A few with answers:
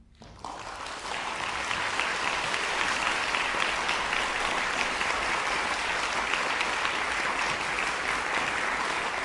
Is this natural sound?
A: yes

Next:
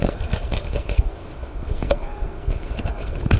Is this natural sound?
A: no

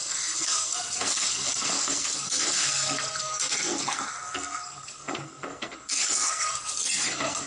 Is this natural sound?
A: no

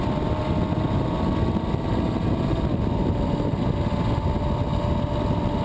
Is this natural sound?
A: yes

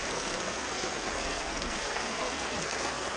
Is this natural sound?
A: no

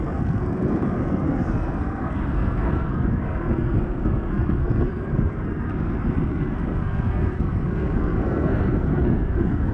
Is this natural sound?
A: no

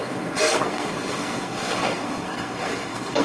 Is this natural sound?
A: no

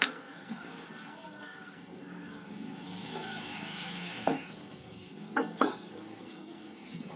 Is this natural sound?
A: no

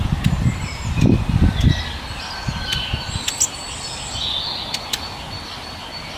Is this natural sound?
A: yes